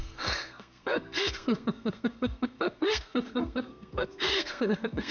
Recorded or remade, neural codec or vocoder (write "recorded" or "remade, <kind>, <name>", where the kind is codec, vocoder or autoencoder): remade, codec, SNAC